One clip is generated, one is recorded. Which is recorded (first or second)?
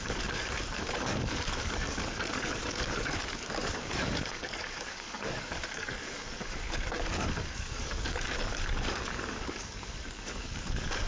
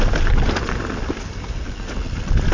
second